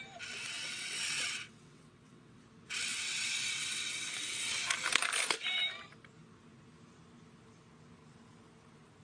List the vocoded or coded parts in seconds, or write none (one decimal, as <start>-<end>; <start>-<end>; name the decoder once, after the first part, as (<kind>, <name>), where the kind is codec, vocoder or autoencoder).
0.4-2.4 (vocoder, WaveNeXt); 2.9-4.5